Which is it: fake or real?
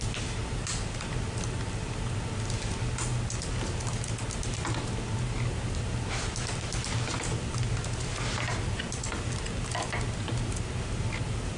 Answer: real